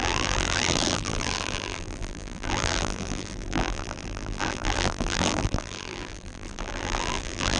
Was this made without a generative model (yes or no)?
no